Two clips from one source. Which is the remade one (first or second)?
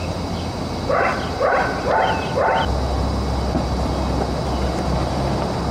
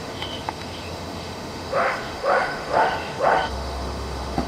second